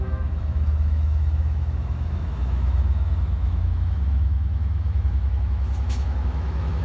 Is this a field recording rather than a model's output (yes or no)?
no